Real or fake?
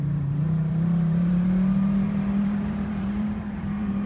fake